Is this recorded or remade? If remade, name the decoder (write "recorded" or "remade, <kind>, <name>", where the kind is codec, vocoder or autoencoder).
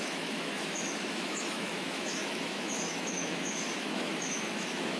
remade, autoencoder, DAC-VAE